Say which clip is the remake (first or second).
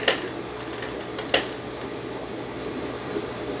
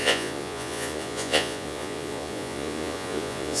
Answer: second